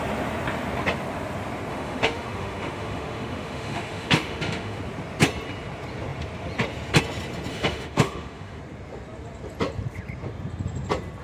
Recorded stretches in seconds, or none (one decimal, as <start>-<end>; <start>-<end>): 0.0-1.7; 4.8-7.5; 8.6-11.2